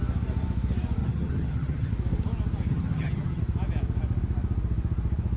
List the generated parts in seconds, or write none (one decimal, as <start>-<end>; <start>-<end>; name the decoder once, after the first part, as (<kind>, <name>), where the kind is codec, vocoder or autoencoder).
1.0-1.9 (vocoder, HiFi-GAN); 2.7-3.4

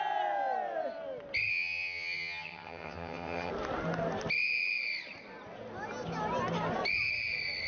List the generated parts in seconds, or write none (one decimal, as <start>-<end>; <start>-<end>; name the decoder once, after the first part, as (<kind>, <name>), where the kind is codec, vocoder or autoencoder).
1.5-3.5 (vocoder, HiFi-GAN)